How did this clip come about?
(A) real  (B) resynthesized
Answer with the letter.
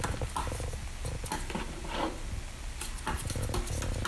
A